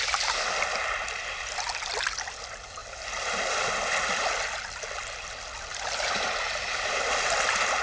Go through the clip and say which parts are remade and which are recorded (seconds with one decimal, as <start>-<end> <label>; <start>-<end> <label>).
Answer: 0.0-7.8 recorded